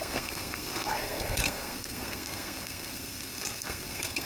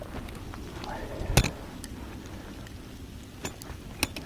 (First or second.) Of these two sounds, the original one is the second